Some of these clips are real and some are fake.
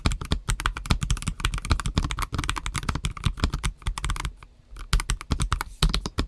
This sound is real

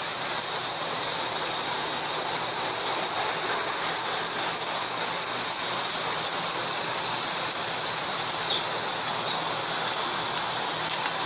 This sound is real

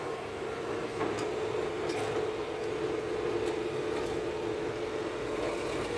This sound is real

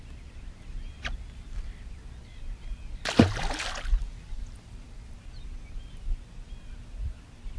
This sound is real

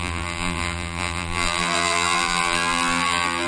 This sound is fake